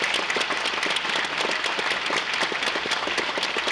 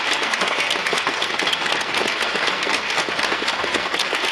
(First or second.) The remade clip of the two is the second